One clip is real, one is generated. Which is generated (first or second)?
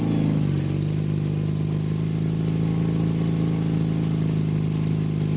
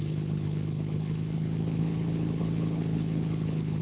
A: second